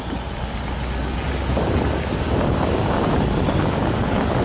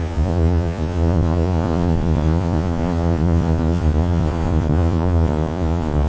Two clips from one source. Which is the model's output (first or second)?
second